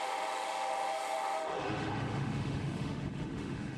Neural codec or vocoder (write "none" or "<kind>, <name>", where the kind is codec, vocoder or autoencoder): autoencoder, DAC-VAE